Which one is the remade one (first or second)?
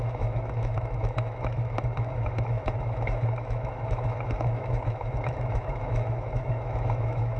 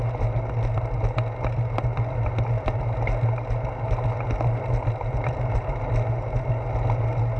first